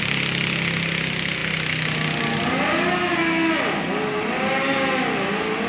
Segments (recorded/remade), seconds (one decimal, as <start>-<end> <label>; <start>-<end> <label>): 0.0-5.7 recorded